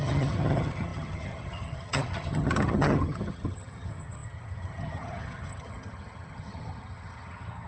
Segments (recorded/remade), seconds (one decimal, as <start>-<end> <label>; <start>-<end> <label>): 0.0-7.7 remade